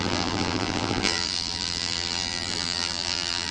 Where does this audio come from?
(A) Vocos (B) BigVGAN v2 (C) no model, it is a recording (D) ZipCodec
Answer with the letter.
B